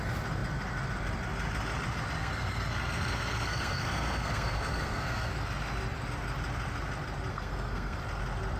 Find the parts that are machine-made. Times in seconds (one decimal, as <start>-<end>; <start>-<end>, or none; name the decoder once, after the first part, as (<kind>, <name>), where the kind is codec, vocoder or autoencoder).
2.2-5.3 (codec, SNAC); 7.3-8.0